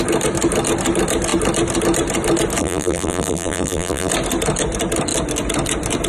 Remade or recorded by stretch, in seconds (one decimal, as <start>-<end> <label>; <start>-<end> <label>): 0.0-2.6 recorded; 2.6-4.1 remade; 4.1-6.1 recorded